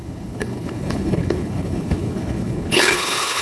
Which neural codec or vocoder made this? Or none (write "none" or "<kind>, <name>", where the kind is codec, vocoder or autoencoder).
codec, HILCodec